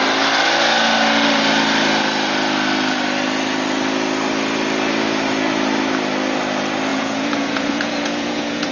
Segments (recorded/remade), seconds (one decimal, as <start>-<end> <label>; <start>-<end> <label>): 0.0-6.9 recorded; 6.9-8.7 remade

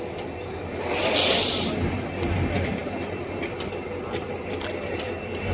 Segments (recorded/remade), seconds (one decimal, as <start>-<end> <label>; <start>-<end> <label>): 0.0-5.5 recorded

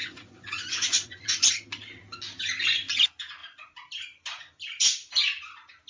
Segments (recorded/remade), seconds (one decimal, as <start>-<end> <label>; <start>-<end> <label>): 0.0-1.5 remade; 1.5-5.9 recorded

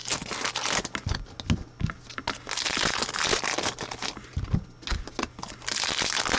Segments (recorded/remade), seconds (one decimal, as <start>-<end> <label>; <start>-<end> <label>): 0.0-6.4 recorded

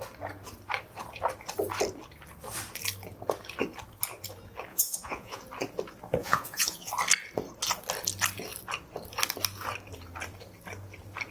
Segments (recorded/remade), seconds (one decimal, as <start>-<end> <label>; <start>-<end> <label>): 0.0-4.7 recorded; 4.7-5.4 remade; 5.4-6.2 recorded; 6.2-6.9 remade; 6.9-11.3 recorded

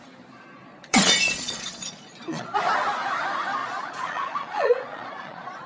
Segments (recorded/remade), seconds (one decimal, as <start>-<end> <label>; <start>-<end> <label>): 0.0-0.7 recorded; 0.7-2.6 remade; 2.6-3.6 recorded; 3.6-5.7 remade

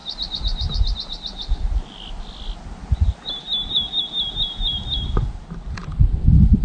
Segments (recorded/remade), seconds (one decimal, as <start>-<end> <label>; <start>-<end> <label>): 0.0-6.6 recorded